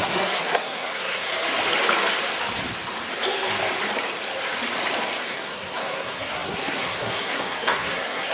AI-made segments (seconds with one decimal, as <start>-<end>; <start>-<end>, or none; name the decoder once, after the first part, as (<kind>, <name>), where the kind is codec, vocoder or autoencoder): 0.0-1.3 (codec, SNAC); 5.3-8.3